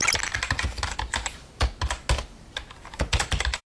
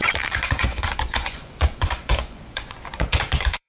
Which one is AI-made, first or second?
second